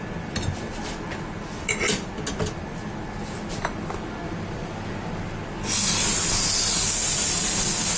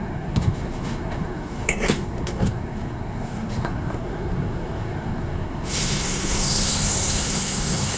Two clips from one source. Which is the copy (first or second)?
second